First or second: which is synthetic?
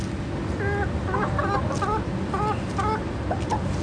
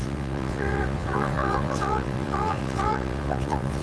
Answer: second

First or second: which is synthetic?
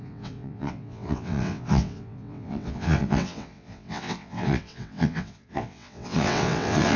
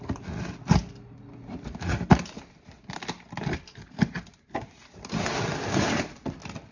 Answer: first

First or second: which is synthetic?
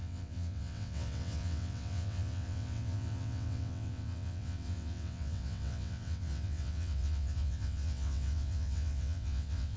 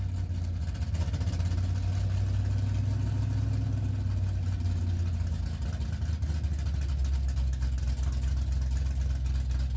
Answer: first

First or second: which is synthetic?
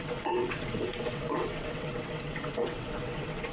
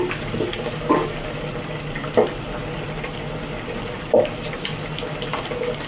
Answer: first